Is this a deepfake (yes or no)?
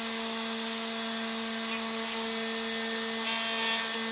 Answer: no